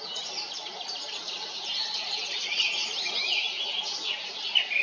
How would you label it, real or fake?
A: real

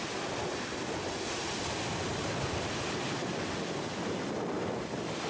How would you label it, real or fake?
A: real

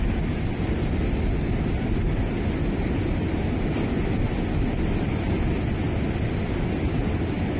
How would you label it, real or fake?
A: real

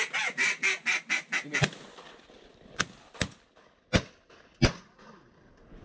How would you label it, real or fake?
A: real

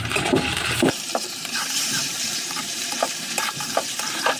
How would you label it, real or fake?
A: fake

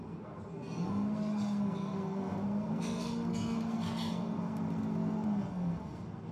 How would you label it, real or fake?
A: fake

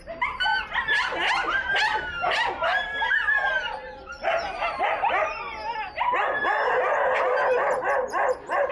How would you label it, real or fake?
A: real